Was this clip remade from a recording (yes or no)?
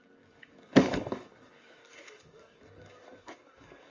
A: yes